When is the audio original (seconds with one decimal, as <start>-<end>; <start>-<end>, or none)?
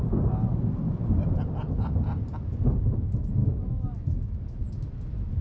0.0-3.4; 4.6-5.4